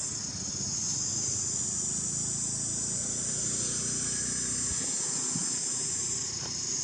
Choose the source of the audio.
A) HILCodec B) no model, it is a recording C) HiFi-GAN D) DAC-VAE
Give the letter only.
B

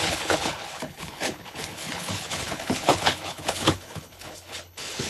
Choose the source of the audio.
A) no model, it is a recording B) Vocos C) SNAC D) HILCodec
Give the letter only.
D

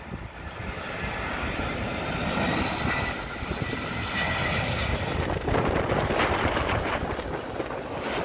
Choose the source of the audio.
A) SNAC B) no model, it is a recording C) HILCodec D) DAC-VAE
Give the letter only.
B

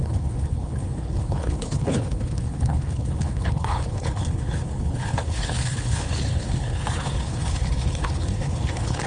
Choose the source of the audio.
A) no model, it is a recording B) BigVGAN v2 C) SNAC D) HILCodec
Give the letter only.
D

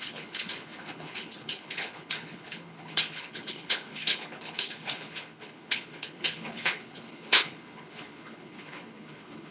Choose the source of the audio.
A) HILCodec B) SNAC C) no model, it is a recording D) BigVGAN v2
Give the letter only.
A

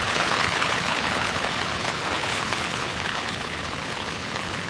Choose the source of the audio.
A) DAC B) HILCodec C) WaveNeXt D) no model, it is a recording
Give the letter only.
B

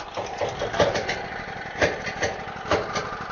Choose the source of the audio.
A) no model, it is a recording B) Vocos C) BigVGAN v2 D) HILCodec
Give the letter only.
A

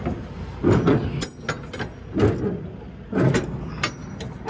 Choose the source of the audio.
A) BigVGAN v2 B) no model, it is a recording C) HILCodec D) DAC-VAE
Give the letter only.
B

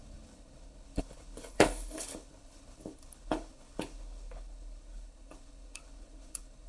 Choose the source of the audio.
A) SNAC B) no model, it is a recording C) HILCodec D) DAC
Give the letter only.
C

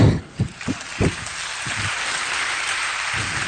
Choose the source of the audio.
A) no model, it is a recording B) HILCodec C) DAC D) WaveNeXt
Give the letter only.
A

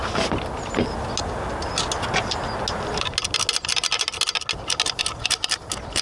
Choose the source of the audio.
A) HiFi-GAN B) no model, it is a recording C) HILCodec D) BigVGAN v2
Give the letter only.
B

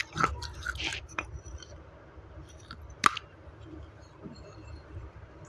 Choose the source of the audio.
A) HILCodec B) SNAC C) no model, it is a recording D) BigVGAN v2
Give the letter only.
C